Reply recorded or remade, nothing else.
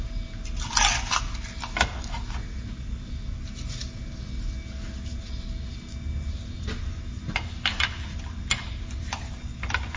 recorded